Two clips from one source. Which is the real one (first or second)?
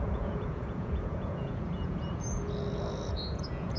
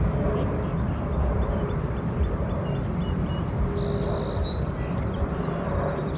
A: second